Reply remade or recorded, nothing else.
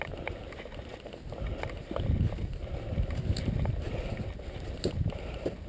recorded